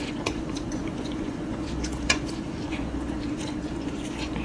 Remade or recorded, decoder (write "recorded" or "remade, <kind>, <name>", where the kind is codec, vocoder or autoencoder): remade, vocoder, Vocos